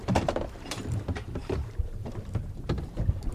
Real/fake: fake